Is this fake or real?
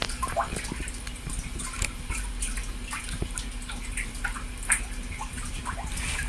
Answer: real